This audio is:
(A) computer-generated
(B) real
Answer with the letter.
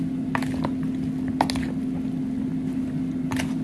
B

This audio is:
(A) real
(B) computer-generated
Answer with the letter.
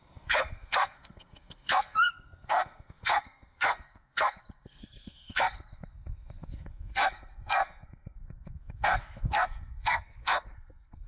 B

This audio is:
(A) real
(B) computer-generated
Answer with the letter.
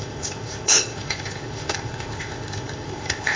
B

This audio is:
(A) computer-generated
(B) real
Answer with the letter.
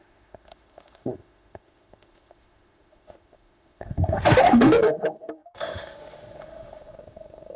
A